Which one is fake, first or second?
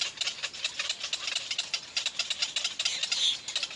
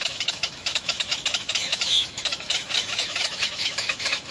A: second